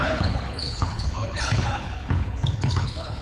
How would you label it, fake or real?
fake